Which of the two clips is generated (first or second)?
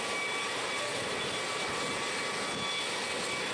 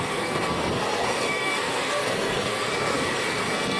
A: second